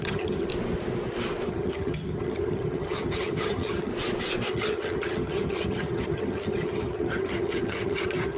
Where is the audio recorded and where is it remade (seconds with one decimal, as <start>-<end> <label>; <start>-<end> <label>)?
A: 0.0-0.5 remade; 0.5-1.5 recorded; 1.5-3.9 remade; 3.9-4.5 recorded; 4.5-8.4 remade